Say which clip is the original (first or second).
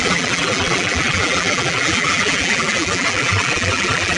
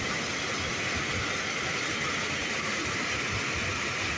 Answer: second